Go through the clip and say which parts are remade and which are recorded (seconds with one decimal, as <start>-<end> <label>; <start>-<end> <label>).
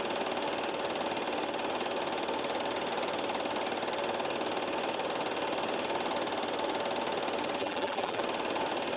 0.0-7.6 recorded; 7.6-8.2 remade; 8.2-9.0 recorded